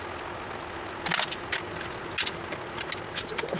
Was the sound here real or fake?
real